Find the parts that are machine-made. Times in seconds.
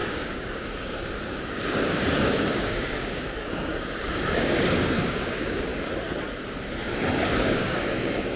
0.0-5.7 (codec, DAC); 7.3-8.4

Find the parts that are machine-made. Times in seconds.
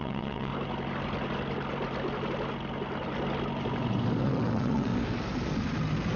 0.0-0.5 (vocoder, WaveNeXt); 4.2-4.9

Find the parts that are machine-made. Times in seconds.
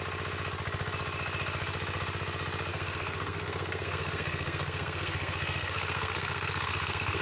2.7-7.2 (codec, SNAC)